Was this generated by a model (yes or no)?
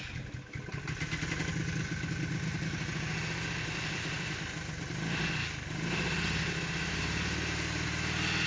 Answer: no